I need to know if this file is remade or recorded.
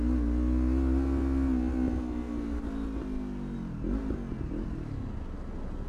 recorded